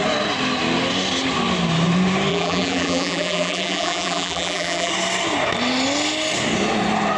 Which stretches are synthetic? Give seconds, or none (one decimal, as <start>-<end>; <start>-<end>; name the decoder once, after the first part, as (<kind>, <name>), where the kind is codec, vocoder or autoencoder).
2.3-4.9 (vocoder, BigVGAN v2)